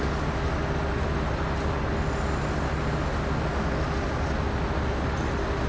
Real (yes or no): yes